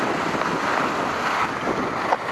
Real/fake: real